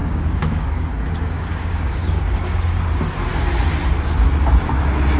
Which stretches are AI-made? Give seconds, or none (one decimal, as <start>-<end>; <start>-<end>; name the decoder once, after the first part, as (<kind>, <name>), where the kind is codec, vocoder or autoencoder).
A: 0.0-0.7 (codec, DAC); 1.5-2.9